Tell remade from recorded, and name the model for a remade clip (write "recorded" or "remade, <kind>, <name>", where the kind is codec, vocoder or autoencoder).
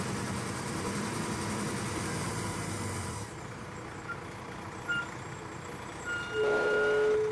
recorded